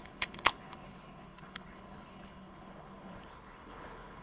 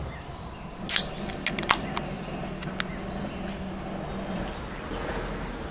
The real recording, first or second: second